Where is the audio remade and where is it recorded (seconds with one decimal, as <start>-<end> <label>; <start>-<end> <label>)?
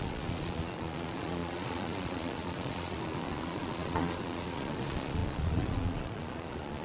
0.0-6.8 remade